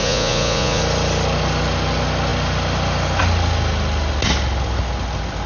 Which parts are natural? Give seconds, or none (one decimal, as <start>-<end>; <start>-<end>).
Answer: 0.8-5.5